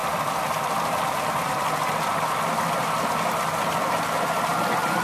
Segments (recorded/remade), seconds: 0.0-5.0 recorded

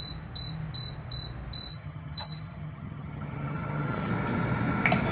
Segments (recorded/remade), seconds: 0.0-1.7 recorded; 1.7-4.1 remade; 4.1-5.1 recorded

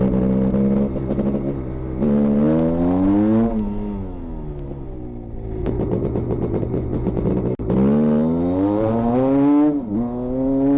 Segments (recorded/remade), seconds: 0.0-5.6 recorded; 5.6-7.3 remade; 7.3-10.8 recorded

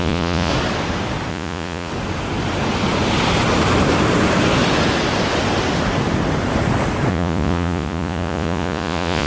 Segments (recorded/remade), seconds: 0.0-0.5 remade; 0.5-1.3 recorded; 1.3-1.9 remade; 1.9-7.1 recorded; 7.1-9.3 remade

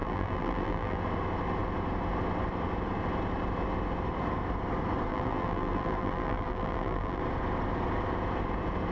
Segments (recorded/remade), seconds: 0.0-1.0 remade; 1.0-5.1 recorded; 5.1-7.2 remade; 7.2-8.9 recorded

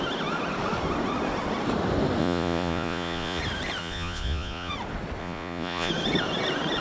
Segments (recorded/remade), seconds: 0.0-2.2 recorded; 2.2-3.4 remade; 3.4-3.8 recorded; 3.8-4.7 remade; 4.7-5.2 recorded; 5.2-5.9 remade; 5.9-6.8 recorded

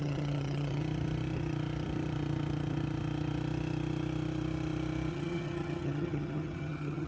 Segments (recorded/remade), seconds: 0.0-0.8 remade; 0.8-5.1 recorded; 5.1-7.1 remade